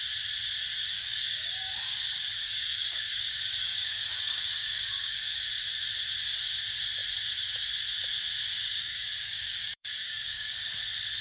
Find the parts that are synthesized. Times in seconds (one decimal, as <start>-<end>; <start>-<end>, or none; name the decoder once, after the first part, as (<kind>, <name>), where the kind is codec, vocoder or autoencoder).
0.9-5.5 (codec, DAC); 8.6-10.6